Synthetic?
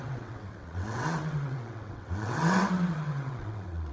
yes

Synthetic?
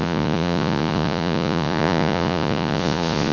yes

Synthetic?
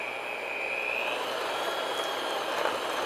no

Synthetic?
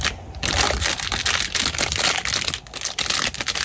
no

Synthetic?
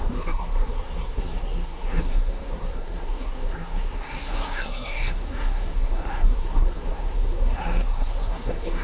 yes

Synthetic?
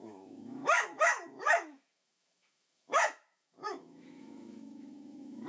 yes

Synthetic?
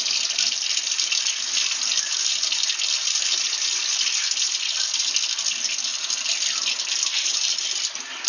no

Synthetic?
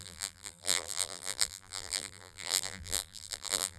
yes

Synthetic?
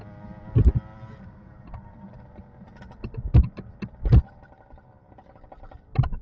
no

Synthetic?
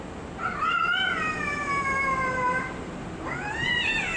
no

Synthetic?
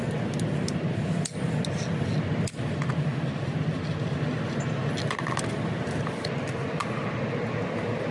no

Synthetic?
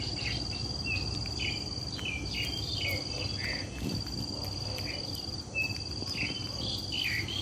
no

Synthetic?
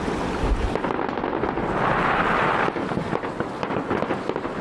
no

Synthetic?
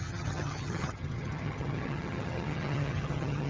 yes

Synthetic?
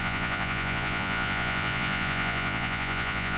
yes